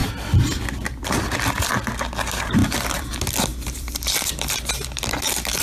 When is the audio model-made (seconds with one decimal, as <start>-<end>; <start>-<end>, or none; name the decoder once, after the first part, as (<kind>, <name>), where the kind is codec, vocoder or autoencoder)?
0.0-1.7 (vocoder, BigVGAN v2); 2.6-3.1; 3.5-5.0